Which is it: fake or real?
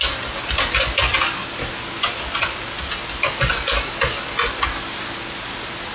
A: real